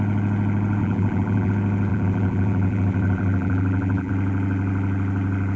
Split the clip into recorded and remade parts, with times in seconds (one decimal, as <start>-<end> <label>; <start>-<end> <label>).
0.0-0.8 recorded; 0.8-1.5 remade; 1.5-1.9 recorded; 1.9-4.1 remade; 4.1-5.6 recorded